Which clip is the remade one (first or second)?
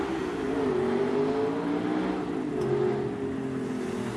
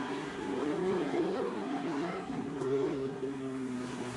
second